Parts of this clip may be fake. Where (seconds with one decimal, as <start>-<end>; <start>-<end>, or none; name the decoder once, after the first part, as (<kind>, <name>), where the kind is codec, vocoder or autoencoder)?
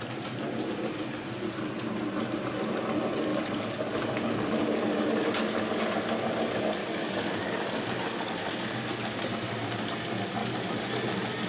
3.3-5.8 (codec, DAC); 6.8-8.3; 10.4-10.9